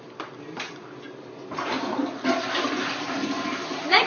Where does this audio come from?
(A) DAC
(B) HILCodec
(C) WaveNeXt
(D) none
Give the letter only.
D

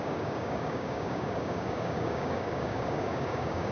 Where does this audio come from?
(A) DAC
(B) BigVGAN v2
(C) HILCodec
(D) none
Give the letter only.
A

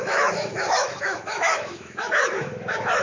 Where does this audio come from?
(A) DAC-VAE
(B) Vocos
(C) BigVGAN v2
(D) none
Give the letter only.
A